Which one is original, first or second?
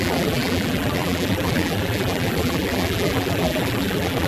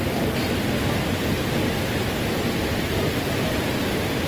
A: second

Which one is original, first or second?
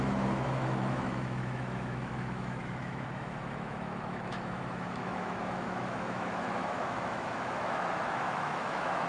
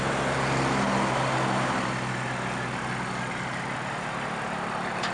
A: second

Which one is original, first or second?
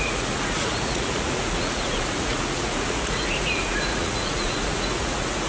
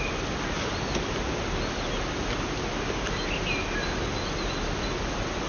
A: second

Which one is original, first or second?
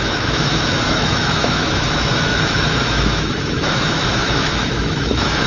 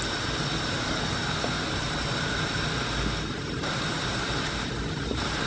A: second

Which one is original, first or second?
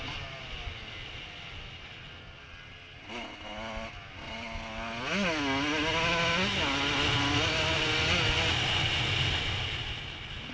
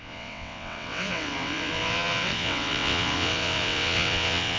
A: first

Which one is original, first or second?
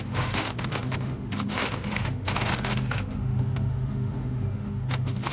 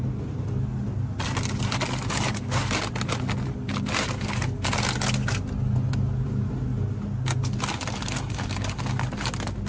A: second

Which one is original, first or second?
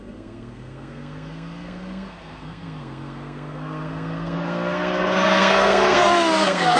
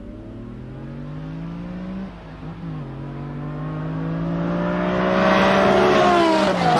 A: second